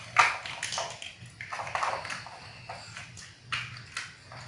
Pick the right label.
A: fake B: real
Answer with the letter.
B